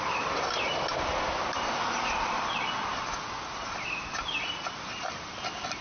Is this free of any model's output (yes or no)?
yes